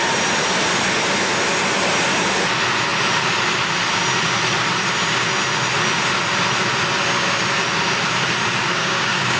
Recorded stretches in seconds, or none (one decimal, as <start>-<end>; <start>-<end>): 0.0-8.6